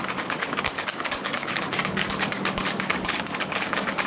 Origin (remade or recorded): remade